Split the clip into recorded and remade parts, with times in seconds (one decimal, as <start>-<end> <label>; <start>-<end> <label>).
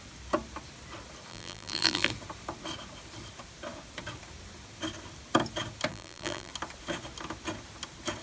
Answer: 0.0-1.3 recorded; 1.3-2.1 remade; 2.1-5.9 recorded; 5.9-6.5 remade; 6.5-8.2 recorded